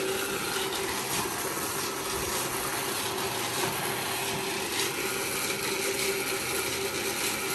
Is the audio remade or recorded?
recorded